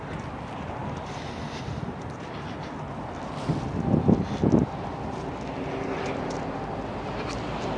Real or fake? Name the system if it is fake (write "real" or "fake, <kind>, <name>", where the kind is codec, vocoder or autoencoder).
real